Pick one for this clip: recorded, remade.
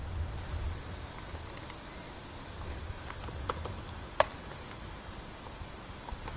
recorded